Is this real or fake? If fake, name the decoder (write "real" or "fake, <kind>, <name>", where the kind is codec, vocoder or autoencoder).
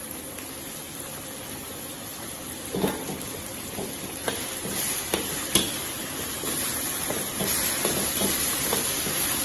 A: real